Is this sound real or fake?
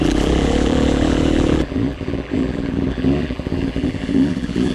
fake